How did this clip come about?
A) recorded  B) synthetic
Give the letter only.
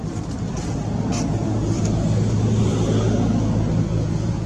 A